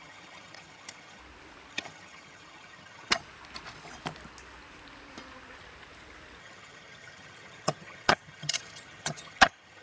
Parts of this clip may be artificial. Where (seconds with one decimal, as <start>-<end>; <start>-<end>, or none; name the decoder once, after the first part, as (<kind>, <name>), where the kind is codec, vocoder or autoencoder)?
0.0-1.2 (vocoder, HiFi-GAN); 1.7-3.2; 6.4-9.8